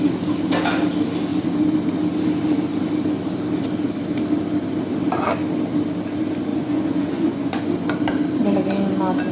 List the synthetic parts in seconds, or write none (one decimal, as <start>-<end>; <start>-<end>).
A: 6.5-7.6